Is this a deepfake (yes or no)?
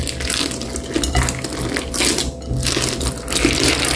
no